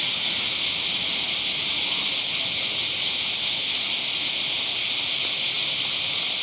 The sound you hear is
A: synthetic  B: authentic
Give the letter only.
B